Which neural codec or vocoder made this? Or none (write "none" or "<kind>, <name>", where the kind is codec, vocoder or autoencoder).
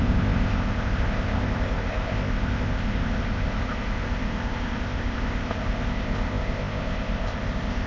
codec, ZipCodec